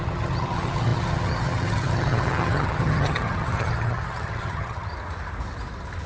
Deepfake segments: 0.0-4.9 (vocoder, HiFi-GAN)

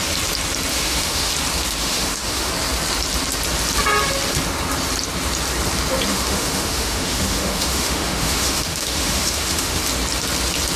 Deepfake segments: 0.7-1.3 (autoencoder, DAC-VAE); 1.8-2.5; 6.1-9.8

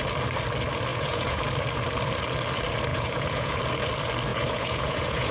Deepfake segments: 0.9-1.4 (vocoder, Vocos); 2.9-3.6; 4.3-5.3

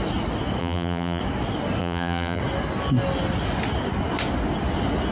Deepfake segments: 0.6-1.2 (vocoder, BigVGAN v2); 1.8-2.4

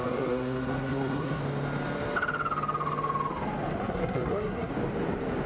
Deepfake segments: 0.0-1.4 (codec, SNAC); 3.8-4.7

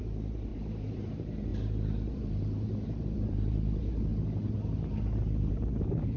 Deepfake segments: 0.0-1.5 (vocoder, BigVGAN v2); 2.1-4.1; 5.4-6.2

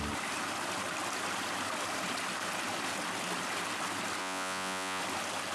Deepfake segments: 4.2-5.0 (vocoder, Vocos)